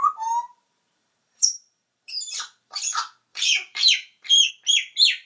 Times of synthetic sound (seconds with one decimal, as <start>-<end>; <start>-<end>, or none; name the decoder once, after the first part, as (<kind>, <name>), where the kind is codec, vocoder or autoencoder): 0.0-2.8 (vocoder, BigVGAN v2); 3.3-4.5